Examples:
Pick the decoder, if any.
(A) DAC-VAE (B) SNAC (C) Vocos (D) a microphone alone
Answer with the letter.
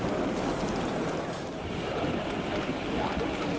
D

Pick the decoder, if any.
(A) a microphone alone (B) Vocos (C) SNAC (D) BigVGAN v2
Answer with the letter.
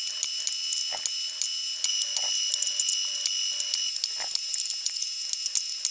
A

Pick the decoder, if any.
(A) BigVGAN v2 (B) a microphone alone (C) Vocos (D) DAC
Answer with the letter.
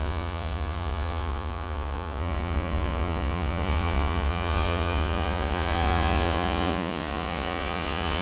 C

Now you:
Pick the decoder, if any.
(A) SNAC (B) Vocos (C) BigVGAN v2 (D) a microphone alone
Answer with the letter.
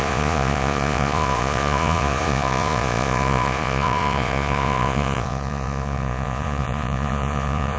B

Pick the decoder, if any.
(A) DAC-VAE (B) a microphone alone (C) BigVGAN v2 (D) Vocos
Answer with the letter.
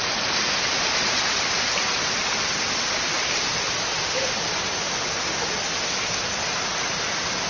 B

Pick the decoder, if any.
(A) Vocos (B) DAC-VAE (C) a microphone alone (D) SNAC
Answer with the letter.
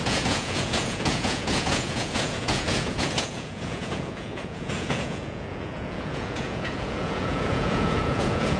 A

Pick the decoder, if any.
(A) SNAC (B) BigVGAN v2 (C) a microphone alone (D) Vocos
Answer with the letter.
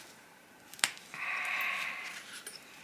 C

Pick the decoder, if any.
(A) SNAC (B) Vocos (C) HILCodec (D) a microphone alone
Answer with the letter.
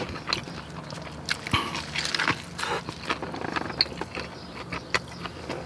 D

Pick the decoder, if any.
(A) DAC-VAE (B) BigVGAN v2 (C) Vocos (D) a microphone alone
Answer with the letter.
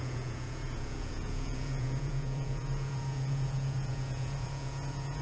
C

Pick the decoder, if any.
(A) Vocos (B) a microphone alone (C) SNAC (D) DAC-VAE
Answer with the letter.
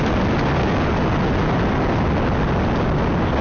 B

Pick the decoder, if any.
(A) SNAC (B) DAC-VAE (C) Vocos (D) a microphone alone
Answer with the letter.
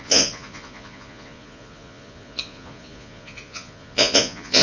C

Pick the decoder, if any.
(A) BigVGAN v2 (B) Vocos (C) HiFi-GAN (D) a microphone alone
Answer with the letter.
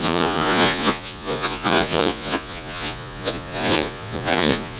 B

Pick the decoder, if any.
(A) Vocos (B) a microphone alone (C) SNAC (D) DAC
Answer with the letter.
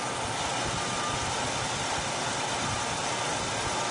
B